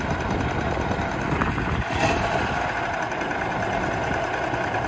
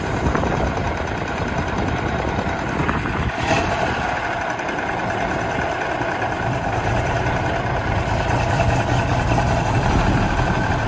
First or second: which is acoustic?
first